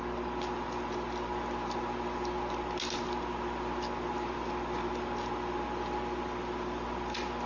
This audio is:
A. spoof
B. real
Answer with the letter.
B